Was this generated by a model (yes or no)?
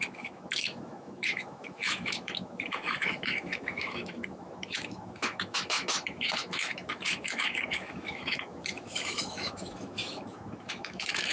yes